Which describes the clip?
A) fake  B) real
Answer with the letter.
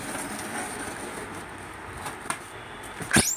B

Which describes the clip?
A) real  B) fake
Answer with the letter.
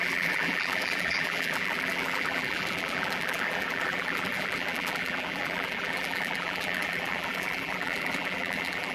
B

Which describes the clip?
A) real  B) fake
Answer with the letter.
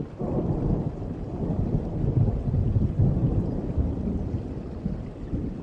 A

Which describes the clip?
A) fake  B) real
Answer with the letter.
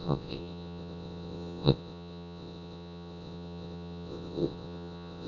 A